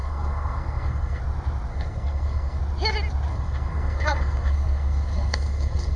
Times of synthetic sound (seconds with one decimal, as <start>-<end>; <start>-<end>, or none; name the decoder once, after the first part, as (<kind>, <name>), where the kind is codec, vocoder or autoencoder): 0.0-1.2 (codec, SNAC); 1.7-2.6; 3.3-6.0